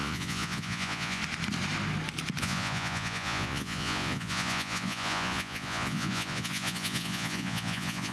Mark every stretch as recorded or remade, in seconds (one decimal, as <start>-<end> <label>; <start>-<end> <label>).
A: 0.0-1.2 remade; 1.2-2.4 recorded; 2.4-8.1 remade